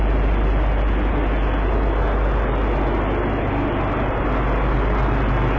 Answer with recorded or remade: recorded